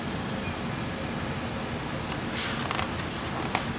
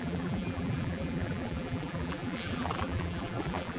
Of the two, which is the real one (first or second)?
first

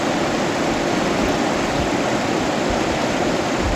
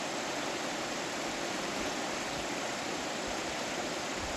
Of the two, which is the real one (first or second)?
first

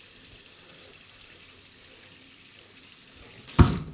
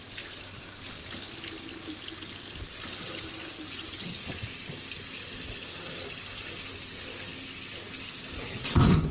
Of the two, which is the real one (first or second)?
second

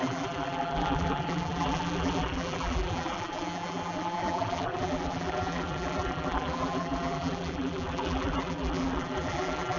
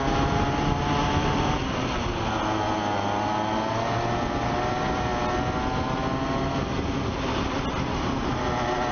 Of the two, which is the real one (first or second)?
second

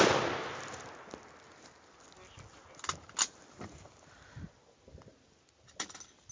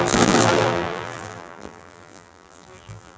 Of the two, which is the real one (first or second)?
first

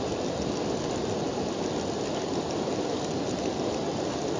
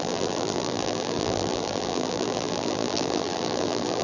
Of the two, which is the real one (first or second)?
first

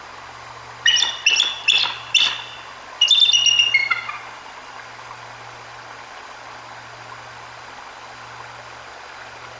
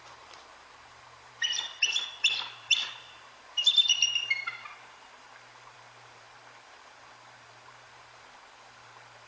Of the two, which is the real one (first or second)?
first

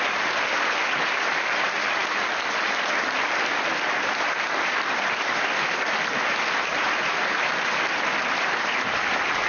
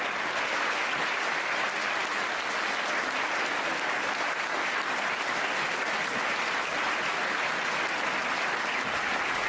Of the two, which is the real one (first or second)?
second